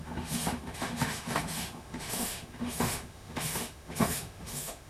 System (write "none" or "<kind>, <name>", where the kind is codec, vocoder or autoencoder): autoencoder, DAC-VAE